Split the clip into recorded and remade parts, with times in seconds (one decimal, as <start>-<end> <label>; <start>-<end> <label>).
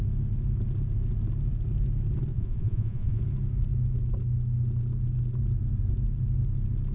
0.0-2.3 recorded; 2.3-3.2 remade; 3.2-6.9 recorded